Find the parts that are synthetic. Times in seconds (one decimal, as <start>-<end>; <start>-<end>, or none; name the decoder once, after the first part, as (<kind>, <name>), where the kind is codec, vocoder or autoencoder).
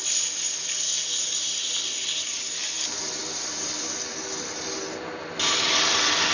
none